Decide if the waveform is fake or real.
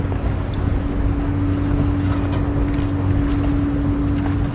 real